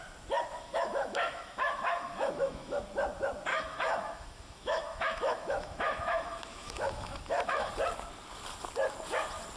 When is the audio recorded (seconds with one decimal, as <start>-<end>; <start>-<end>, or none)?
0.0-0.5; 2.8-3.5; 7.7-9.6

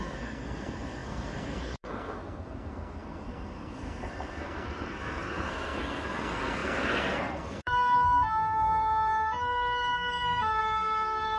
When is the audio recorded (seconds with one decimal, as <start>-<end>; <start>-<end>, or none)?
none

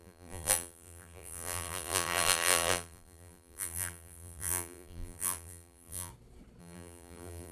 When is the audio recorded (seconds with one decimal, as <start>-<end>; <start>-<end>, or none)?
6.1-6.6

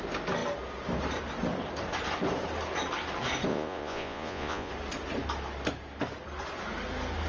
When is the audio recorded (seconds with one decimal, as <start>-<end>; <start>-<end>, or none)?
0.0-3.5; 4.7-7.3

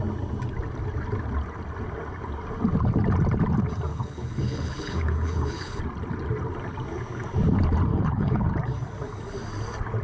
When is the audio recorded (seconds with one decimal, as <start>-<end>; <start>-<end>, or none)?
0.0-3.9; 5.8-7.9; 8.5-10.0

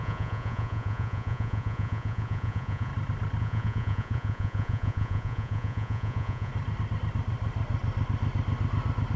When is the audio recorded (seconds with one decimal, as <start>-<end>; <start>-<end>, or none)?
2.9-3.4; 6.5-9.2

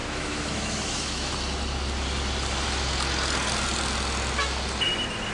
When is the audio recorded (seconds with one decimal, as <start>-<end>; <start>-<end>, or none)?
1.3-5.3

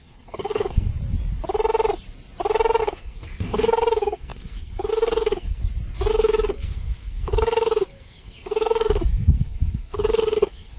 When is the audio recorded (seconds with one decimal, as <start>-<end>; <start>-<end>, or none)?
0.9-2.8; 5.6-6.1